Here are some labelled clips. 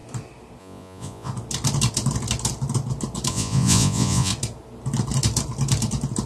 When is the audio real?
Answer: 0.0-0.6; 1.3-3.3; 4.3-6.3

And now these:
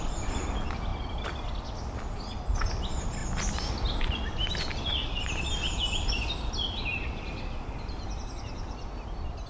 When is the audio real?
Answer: 0.0-9.5

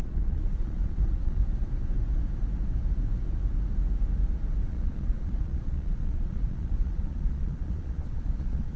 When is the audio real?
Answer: 1.4-4.7